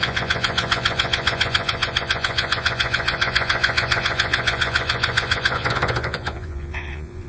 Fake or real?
fake